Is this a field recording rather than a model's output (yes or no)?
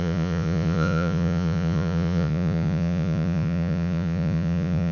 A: no